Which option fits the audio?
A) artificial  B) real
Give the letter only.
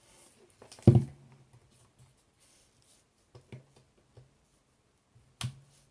B